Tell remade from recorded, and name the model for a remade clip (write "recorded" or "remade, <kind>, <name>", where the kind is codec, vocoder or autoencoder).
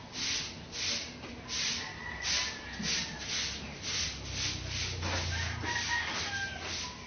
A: recorded